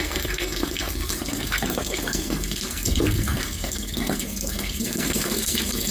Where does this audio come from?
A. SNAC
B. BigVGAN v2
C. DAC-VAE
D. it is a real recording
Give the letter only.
A